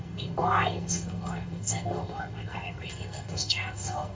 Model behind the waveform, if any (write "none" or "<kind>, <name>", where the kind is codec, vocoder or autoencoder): codec, SNAC